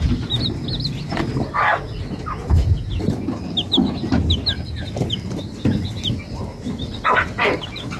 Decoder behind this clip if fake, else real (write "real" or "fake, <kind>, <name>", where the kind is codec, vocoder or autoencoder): real